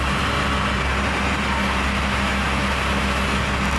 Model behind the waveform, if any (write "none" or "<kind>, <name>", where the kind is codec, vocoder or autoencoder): none